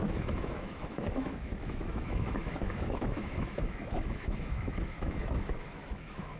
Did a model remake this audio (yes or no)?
yes